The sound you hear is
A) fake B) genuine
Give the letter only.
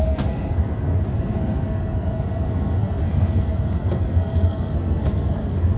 A